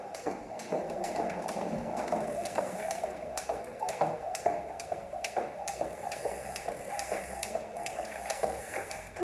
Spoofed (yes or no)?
yes